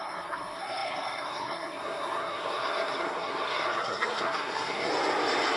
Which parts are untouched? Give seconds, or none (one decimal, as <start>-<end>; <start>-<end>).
4.9-5.6